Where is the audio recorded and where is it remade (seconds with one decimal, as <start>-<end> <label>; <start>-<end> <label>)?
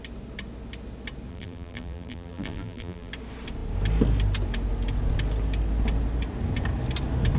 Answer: 0.0-1.3 recorded; 1.3-3.1 remade; 3.1-7.4 recorded